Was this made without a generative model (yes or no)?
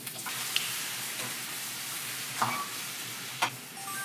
yes